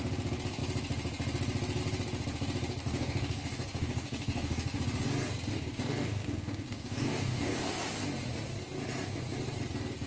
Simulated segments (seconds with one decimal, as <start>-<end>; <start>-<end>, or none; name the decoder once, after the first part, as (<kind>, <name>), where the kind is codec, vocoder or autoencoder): 2.8-4.8 (codec, DAC); 5.5-7.7